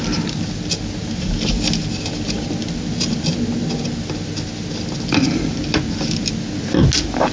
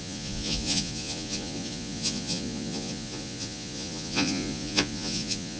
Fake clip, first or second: second